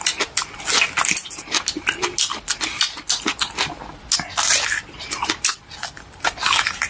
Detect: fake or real real